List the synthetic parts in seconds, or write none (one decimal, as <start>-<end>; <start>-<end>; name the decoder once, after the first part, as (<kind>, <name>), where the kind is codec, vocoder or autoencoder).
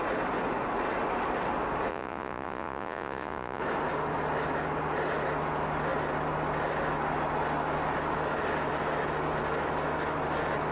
1.9-3.6 (vocoder, Vocos)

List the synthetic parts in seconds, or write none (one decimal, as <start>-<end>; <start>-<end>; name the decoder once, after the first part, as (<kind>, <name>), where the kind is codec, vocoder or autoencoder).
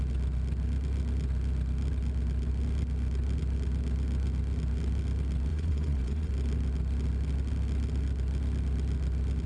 5.5-6.3 (vocoder, Vocos)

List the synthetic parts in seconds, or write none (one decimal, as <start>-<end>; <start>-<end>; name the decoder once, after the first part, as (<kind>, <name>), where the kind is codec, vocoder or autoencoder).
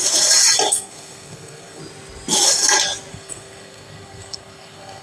0.7-1.8 (codec, SNAC); 3.1-5.0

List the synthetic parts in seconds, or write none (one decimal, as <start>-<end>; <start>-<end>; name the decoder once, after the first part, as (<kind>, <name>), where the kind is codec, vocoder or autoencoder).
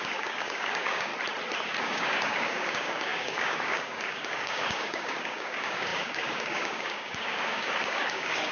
0.0-1.1 (codec, DAC); 1.8-8.5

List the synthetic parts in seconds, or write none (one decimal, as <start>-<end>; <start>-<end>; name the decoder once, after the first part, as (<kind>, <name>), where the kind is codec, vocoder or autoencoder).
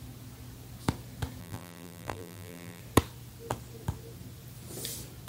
1.4-2.8 (vocoder, BigVGAN v2)